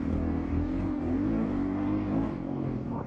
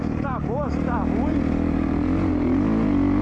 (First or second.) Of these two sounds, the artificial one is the first